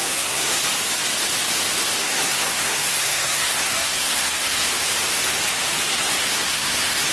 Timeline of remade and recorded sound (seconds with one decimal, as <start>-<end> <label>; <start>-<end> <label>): 0.0-0.7 remade; 0.7-2.0 recorded; 2.0-4.7 remade; 4.7-5.9 recorded; 5.9-7.1 remade